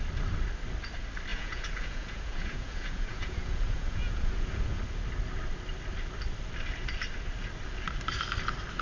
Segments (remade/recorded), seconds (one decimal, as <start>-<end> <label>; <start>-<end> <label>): 0.0-1.3 recorded; 1.3-4.8 remade; 4.8-8.8 recorded

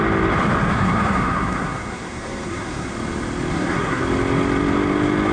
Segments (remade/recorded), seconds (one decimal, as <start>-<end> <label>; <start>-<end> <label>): 0.0-0.7 recorded; 0.7-2.9 remade; 2.9-3.5 recorded; 3.5-4.0 remade; 4.0-5.3 recorded

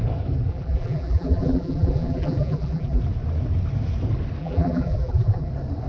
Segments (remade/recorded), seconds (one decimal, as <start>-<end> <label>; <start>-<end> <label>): 0.0-0.5 recorded; 0.5-3.0 remade; 3.0-4.4 recorded; 4.4-5.5 remade; 5.5-5.9 recorded